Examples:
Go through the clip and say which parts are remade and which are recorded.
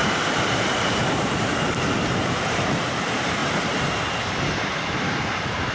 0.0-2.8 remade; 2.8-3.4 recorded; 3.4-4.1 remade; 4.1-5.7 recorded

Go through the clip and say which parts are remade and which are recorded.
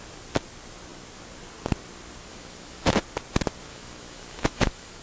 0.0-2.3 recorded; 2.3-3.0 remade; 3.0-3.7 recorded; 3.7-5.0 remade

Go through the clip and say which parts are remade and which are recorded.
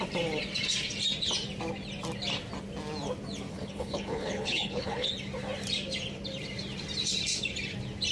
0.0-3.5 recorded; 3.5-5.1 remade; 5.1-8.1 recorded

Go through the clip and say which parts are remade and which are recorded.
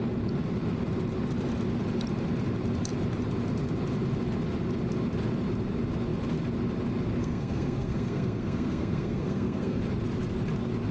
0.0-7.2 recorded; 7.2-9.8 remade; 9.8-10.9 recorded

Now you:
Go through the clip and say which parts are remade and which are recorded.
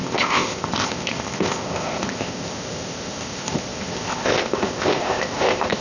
0.0-5.8 remade